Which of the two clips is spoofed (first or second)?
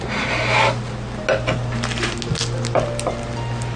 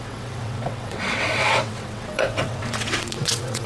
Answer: second